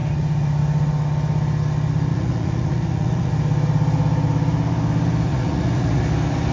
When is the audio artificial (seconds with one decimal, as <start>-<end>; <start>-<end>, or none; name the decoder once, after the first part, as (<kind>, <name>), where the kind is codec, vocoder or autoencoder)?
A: 2.1-3.3 (vocoder, Vocos); 5.3-6.0